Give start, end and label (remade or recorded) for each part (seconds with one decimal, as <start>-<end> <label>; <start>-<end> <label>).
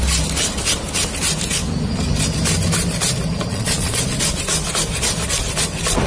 0.0-3.5 recorded; 3.5-4.0 remade; 4.0-6.1 recorded